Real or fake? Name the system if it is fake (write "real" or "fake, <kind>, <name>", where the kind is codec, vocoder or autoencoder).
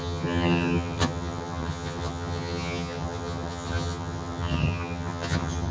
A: fake, vocoder, HiFi-GAN